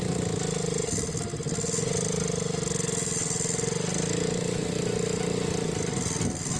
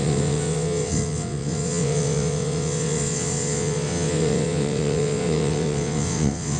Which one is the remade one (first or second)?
second